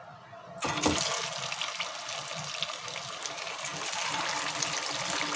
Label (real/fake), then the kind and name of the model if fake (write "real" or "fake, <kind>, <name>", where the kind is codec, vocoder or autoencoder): real